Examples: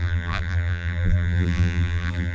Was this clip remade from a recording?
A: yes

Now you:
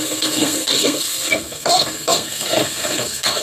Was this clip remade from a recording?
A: yes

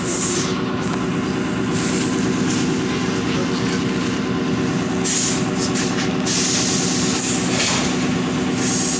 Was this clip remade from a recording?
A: no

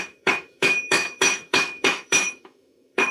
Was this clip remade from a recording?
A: yes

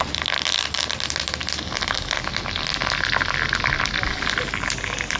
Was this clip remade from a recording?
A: no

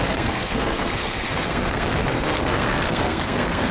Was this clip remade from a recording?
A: yes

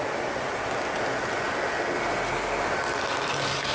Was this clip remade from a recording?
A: no